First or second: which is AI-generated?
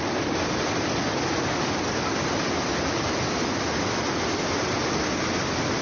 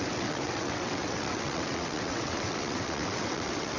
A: second